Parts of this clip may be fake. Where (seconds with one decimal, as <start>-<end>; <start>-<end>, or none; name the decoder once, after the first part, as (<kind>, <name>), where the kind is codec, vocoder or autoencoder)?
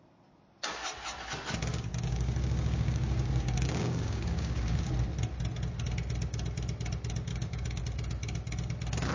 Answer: 1.7-4.9 (codec, DAC); 7.3-7.8